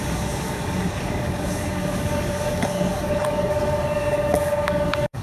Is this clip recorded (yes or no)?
no